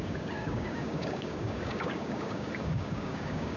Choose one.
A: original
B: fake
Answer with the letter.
B